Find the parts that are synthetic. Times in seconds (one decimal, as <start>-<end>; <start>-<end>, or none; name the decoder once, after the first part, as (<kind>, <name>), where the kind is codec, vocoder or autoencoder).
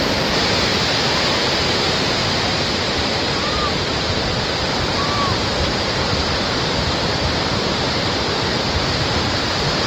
0.0-0.7 (vocoder, BigVGAN v2); 1.4-9.9